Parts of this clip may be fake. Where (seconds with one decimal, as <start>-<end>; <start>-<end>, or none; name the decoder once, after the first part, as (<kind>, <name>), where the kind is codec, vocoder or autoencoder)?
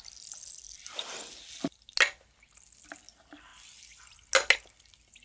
none